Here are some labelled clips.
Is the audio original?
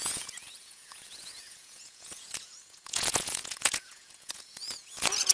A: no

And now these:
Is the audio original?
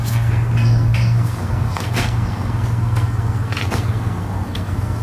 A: no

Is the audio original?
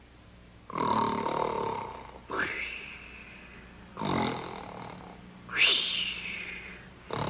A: yes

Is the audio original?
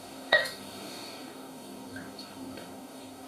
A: no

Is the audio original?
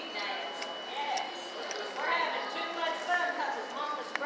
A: yes